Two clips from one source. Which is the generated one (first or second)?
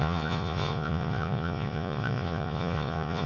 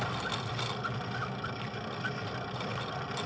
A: first